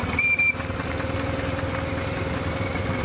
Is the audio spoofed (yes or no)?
no